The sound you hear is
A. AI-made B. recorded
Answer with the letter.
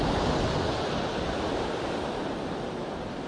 B